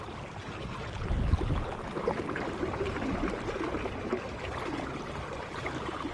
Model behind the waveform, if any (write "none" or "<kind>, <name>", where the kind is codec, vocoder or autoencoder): none